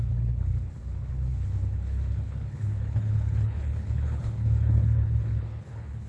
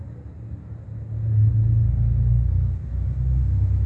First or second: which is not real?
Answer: first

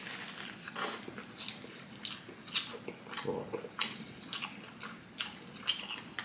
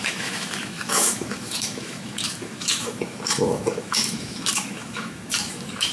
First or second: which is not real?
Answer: second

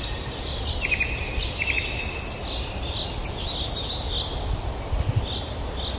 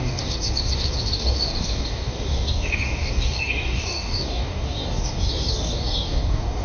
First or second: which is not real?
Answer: second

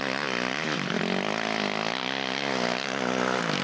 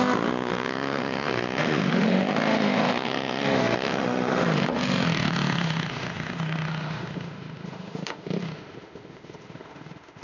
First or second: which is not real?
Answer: second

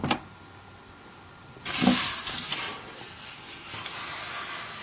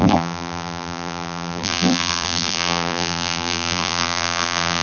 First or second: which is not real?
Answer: second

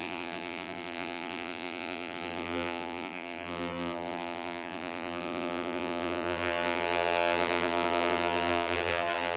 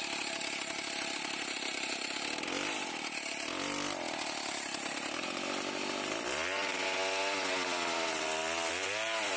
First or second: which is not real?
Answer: first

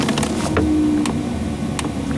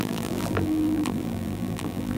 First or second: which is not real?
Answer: second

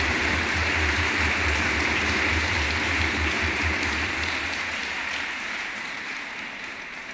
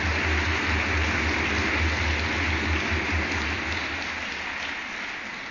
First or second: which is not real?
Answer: first